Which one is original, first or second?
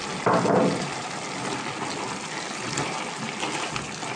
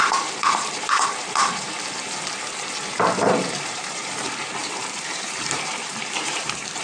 first